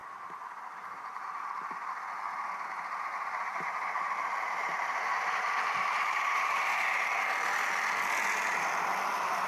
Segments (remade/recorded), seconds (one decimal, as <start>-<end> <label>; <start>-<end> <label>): 0.0-9.5 recorded